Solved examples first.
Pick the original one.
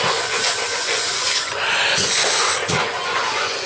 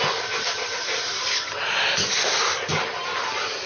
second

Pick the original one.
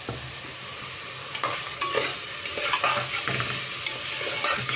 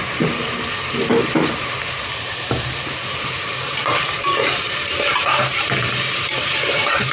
first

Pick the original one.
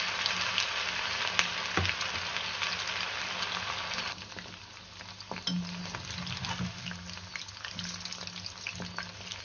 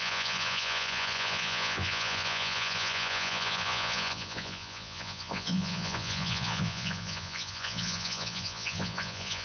first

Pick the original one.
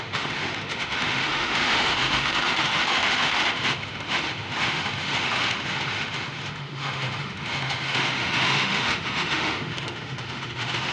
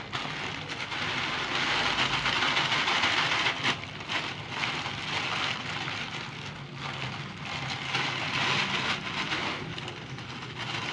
second